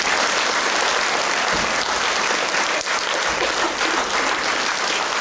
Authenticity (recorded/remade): recorded